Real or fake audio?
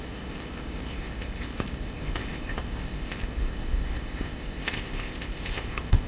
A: fake